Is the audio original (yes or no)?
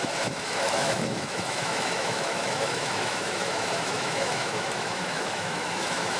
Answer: no